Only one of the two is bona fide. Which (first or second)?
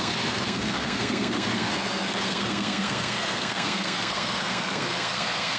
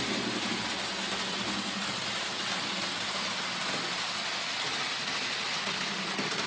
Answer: second